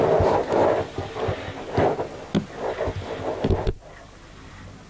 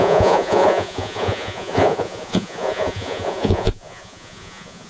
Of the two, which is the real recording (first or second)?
first